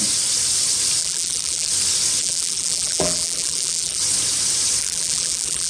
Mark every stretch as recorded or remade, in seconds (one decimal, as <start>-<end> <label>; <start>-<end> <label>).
0.0-1.0 recorded; 1.0-1.7 remade; 1.7-2.2 recorded; 2.2-4.0 remade; 4.0-4.8 recorded; 4.8-5.7 remade